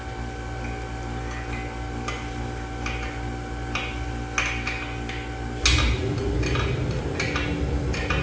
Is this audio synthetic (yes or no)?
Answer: no